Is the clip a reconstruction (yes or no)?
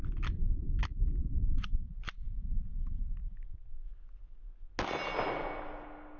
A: no